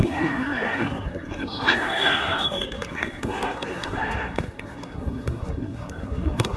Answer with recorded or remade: remade